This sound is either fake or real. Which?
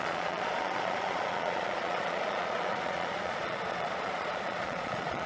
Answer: fake